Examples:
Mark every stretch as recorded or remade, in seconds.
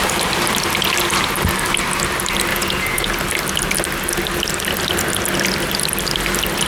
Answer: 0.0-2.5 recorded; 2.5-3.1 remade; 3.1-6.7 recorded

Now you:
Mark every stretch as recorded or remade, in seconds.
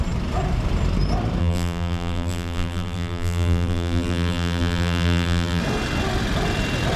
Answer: 0.0-1.4 recorded; 1.4-5.6 remade; 5.6-7.0 recorded